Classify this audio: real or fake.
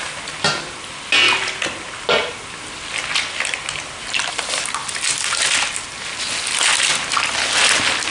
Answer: real